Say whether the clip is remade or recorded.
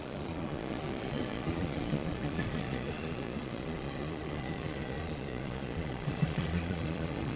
remade